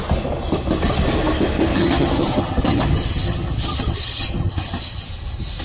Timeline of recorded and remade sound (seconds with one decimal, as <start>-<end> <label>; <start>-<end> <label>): 0.0-1.7 recorded; 1.7-5.1 remade; 5.1-5.6 recorded

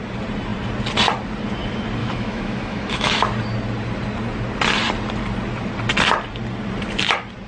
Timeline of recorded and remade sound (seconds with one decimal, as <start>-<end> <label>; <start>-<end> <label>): 0.0-2.0 recorded; 2.0-3.2 remade; 3.2-7.5 recorded

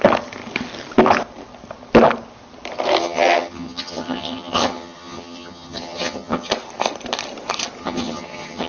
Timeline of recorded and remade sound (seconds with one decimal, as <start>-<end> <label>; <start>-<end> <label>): 0.0-3.0 recorded; 3.0-6.5 remade; 6.5-7.8 recorded; 7.8-8.7 remade

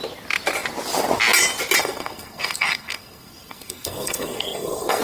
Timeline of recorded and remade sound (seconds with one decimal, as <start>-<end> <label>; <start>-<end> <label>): 0.0-1.8 recorded; 1.8-5.0 remade

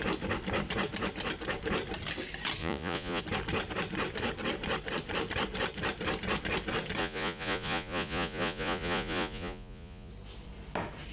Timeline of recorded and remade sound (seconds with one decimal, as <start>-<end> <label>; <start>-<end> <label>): 0.0-2.6 recorded; 2.6-3.2 remade; 3.2-7.0 recorded; 7.0-10.1 remade; 10.1-11.1 recorded

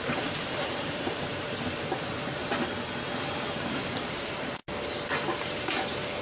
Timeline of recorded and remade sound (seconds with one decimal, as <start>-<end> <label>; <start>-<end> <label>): 0.0-4.6 remade; 4.6-5.4 recorded; 5.4-6.2 remade

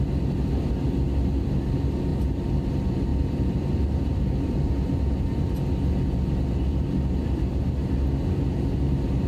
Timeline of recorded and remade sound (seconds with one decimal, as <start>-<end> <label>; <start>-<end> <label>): 0.0-3.1 recorded; 3.1-4.7 remade; 4.7-9.3 recorded

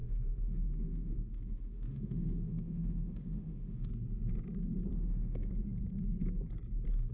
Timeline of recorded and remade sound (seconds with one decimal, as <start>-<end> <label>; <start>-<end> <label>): 0.0-3.9 remade; 3.9-4.9 recorded; 4.9-5.5 remade; 5.5-7.1 recorded